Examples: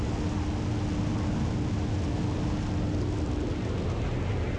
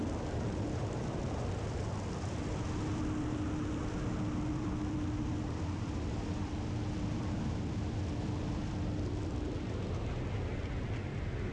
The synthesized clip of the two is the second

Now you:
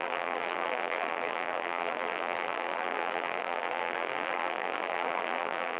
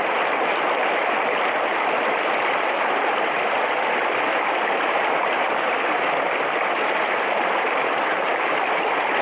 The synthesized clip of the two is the first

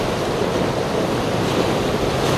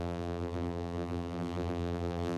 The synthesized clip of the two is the second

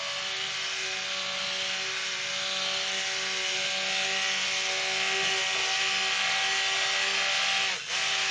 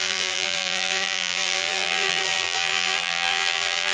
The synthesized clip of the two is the second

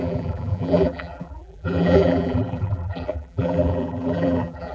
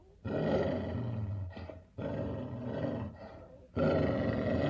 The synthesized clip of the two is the first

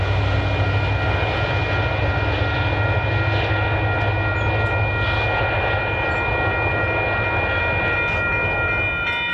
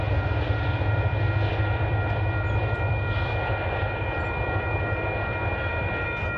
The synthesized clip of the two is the second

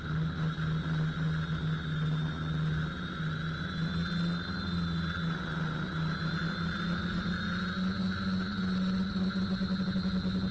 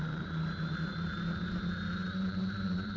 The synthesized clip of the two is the second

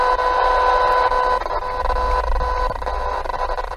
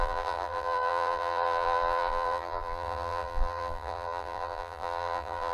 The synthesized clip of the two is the second